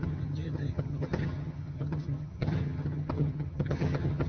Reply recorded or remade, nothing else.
remade